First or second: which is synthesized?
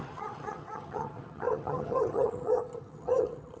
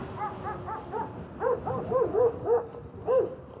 first